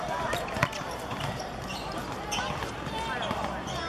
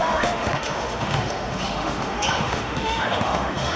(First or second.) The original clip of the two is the first